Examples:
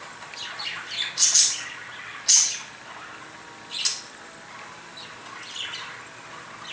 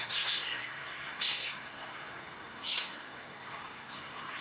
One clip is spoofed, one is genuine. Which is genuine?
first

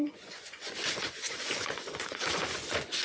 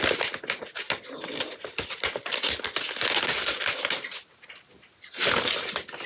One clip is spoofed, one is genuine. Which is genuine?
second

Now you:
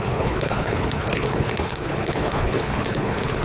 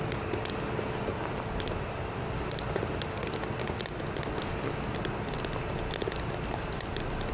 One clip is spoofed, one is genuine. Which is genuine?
second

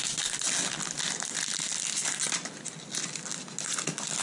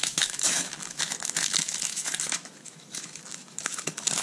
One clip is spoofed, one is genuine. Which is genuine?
first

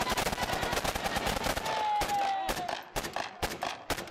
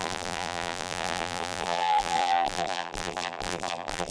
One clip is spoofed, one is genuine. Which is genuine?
first